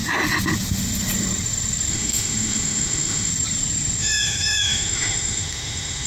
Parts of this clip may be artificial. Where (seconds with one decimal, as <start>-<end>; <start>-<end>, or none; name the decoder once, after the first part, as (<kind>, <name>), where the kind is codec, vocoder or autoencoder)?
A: 1.9-3.3 (autoencoder, DAC-VAE); 4.0-6.1